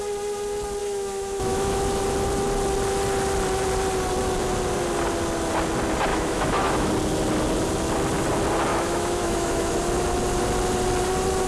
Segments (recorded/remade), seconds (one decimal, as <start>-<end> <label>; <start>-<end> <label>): 0.0-0.8 recorded; 0.8-1.8 remade; 1.8-6.1 recorded; 6.1-6.9 remade; 6.9-8.7 recorded; 8.7-9.7 remade; 9.7-11.5 recorded